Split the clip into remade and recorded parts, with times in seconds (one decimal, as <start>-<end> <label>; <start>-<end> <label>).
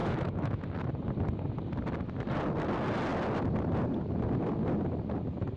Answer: 0.0-0.7 remade; 0.7-5.6 recorded